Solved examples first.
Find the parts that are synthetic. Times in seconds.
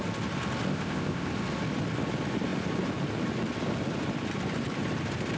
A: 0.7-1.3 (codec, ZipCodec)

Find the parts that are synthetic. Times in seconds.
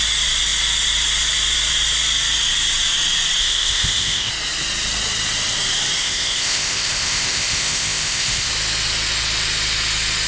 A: 3.4-4.3 (codec, ZipCodec); 6.0-8.5